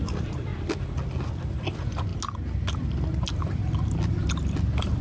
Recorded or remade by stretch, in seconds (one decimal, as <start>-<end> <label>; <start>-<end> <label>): 0.0-0.5 remade; 0.5-1.3 recorded; 1.3-2.1 remade; 2.1-5.0 recorded